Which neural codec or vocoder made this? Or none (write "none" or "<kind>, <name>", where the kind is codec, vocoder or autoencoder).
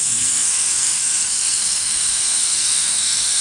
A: codec, SNAC